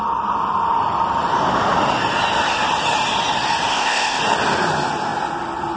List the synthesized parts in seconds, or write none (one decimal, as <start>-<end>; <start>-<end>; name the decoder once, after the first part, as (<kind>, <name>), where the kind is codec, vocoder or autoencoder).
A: 3.7-4.2 (codec, ZipCodec)